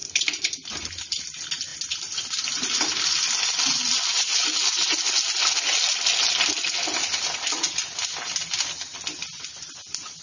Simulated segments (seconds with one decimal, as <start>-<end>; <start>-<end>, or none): 0.0-1.2